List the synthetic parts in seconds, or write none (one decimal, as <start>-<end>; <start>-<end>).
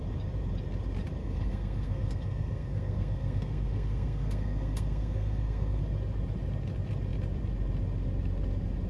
1.2-5.8